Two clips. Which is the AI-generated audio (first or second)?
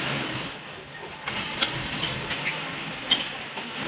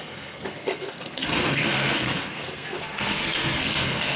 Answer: second